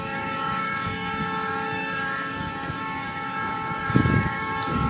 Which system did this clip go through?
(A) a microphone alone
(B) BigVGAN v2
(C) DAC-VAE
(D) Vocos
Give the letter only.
C